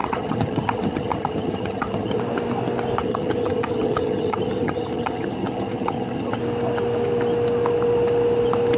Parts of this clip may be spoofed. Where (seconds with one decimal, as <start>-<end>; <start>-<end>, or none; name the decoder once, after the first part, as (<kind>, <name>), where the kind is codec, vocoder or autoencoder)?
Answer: 0.0-2.2 (vocoder, HiFi-GAN); 3.0-6.4